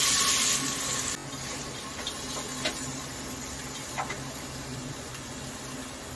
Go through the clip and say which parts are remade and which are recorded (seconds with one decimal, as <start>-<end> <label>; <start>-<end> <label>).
0.0-4.7 recorded; 4.7-5.4 remade; 5.4-6.2 recorded